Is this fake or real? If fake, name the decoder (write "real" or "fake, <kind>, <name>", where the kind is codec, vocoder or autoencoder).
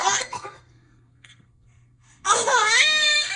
fake, codec, SNAC